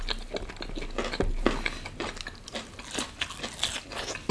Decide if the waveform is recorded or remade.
recorded